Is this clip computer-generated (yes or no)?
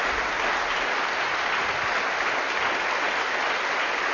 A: no